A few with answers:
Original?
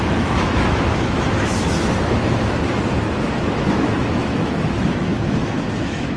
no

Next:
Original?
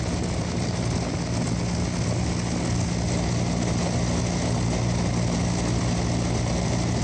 yes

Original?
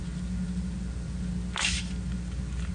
yes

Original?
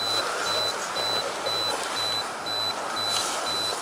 yes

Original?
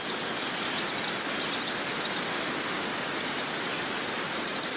yes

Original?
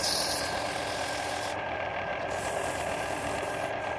yes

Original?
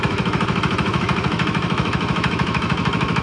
no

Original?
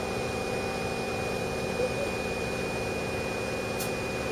yes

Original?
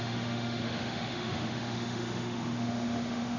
no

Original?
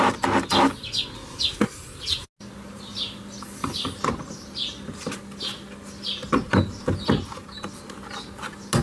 yes